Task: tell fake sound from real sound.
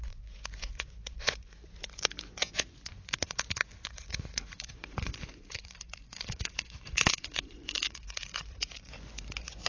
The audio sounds fake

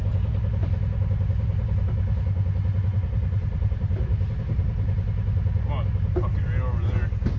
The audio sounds real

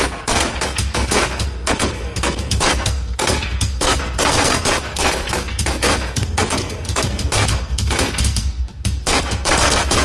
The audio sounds fake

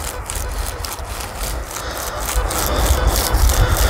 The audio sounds real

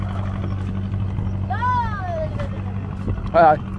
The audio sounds real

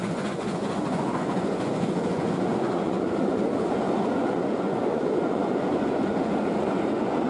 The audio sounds fake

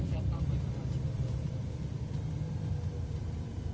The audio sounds fake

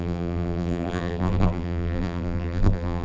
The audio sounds fake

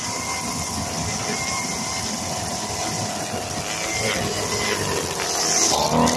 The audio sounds real